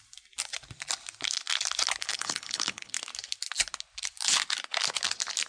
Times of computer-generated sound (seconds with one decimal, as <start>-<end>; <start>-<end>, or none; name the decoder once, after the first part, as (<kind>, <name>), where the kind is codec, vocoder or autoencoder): 2.1-2.9 (codec, HILCodec)